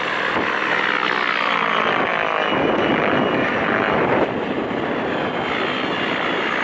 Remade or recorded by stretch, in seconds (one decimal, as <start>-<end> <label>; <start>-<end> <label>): 0.0-6.6 recorded